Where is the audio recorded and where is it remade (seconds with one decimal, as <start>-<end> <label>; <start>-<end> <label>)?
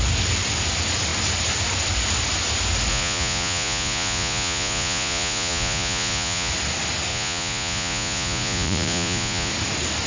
0.0-2.9 recorded; 2.9-6.5 remade; 6.5-7.1 recorded; 7.1-9.5 remade; 9.5-10.1 recorded